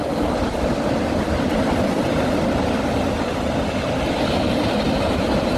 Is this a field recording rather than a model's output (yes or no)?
yes